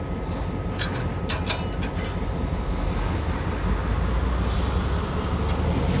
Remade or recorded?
recorded